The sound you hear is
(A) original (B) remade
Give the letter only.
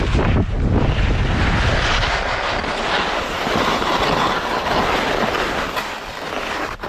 A